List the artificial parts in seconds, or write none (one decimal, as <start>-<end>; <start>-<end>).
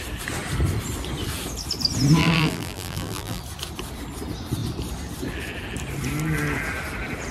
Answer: 2.2-3.4